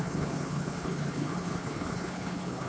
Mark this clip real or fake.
fake